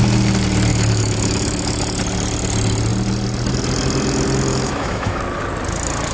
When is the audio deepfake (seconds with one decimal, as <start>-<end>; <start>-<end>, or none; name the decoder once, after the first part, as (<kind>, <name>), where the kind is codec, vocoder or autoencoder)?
0.7-2.0 (autoencoder, DAC-VAE); 4.5-5.2